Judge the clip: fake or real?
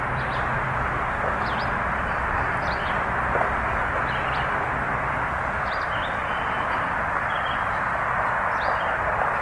real